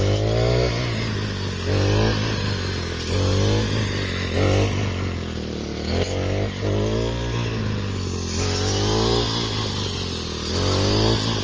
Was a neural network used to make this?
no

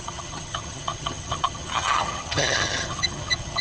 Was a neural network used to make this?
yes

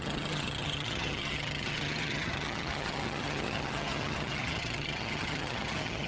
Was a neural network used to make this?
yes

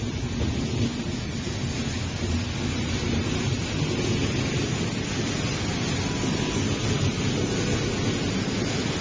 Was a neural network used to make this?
no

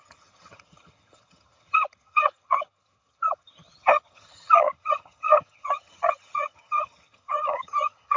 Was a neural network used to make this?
yes